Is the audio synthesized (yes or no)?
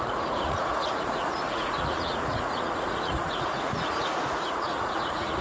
yes